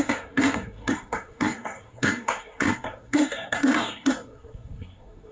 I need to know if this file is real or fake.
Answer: fake